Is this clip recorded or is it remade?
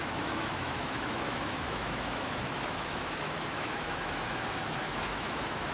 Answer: remade